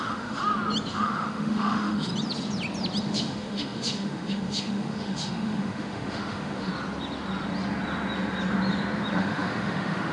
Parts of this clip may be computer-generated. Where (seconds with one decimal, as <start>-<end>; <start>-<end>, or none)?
0.0-0.4; 0.9-2.1; 3.0-6.7; 9.2-10.1